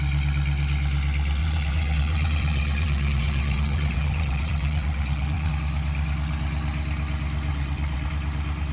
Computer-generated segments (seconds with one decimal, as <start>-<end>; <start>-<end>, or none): 1.4-5.5; 7.5-8.1